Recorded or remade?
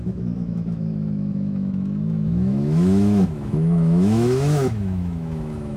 remade